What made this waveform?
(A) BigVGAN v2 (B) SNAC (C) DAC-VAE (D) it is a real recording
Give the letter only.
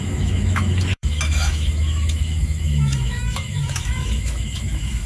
C